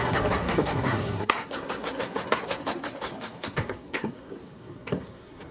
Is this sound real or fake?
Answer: fake